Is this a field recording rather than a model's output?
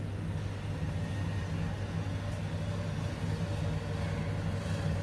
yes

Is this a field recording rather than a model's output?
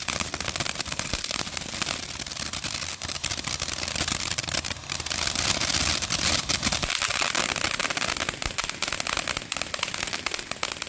yes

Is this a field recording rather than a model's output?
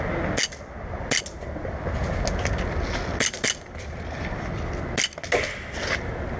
yes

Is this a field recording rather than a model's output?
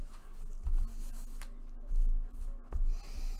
yes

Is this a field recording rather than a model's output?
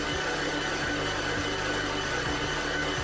yes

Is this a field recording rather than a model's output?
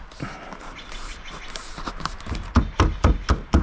yes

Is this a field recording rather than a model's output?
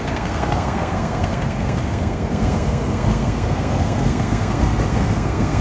no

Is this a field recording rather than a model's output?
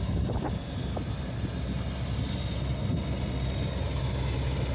yes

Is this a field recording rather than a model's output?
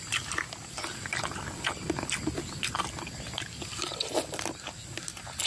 yes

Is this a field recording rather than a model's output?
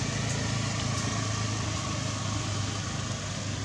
yes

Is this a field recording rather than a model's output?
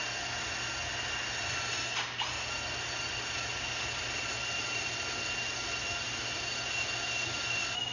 yes